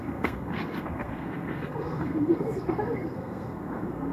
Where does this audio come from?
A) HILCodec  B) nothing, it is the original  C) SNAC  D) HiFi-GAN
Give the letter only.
C